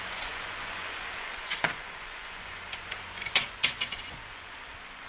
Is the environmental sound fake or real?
fake